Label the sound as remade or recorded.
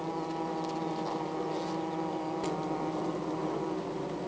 recorded